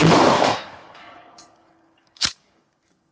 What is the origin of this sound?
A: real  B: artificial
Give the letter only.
B